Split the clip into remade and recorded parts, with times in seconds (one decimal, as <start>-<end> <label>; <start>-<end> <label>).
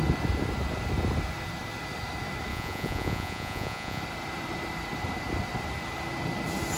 0.0-2.5 recorded; 2.5-4.0 remade; 4.0-6.8 recorded